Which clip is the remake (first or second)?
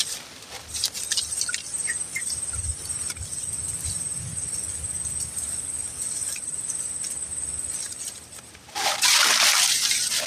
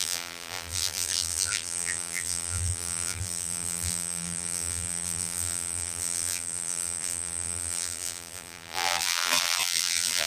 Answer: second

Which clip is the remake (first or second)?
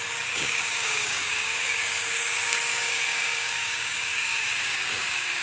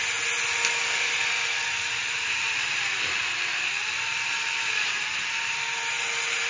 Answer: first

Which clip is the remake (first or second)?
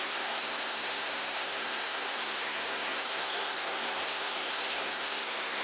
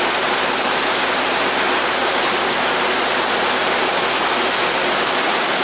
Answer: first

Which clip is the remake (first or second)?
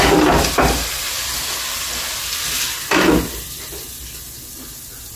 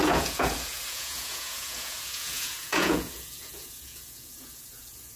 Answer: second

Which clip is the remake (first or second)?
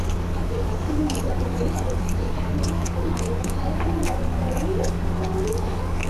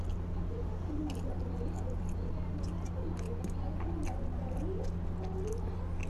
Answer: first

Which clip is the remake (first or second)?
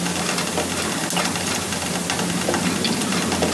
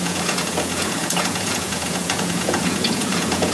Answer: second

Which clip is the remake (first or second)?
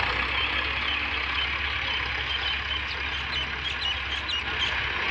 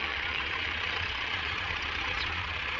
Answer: second